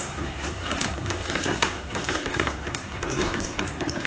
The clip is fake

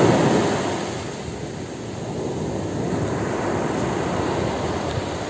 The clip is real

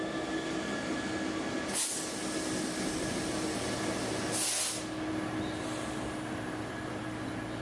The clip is real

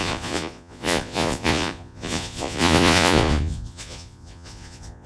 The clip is fake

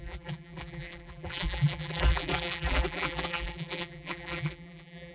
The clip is fake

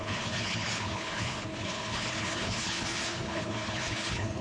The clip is fake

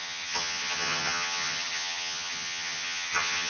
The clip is fake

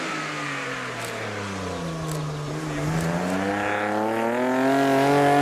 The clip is real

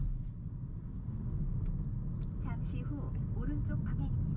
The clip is real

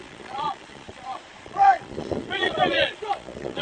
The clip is fake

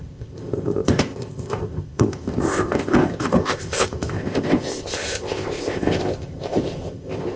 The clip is fake